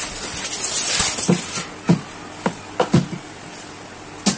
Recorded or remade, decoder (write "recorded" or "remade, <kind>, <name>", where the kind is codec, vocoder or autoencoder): recorded